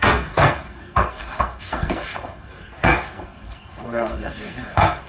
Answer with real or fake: fake